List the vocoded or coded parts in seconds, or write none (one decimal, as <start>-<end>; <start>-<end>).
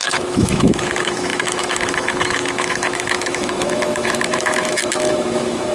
0.0-5.7